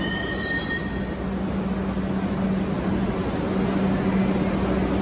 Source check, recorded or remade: recorded